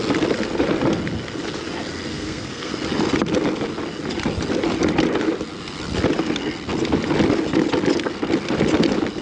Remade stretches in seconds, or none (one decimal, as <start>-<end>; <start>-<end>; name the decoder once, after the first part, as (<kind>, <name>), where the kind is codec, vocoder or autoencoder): 2.1-2.7 (codec, SNAC)